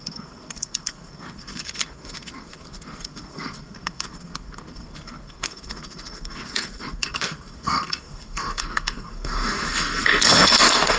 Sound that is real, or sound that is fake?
fake